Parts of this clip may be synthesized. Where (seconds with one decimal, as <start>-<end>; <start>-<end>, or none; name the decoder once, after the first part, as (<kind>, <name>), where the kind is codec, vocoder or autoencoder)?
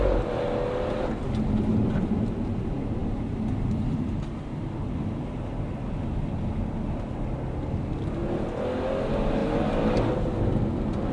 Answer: none